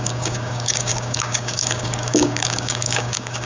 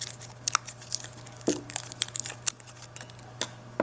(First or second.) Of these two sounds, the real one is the second